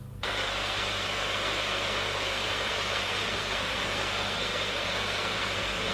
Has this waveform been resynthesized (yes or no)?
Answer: yes